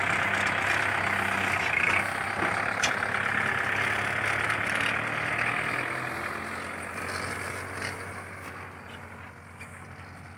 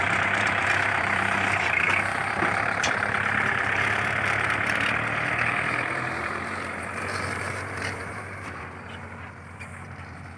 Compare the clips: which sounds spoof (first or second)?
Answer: second